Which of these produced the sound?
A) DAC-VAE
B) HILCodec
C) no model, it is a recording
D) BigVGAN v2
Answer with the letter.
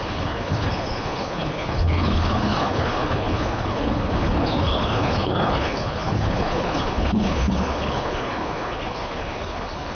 B